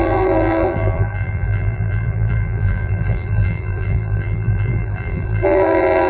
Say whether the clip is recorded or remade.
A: remade